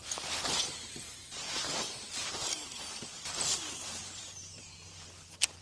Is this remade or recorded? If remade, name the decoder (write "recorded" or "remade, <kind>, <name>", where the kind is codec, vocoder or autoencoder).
remade, vocoder, BigVGAN v2